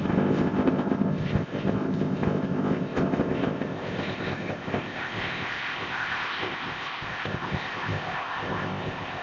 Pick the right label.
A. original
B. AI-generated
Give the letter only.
B